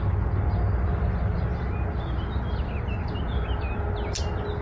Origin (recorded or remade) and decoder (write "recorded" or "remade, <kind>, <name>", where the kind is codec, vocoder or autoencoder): recorded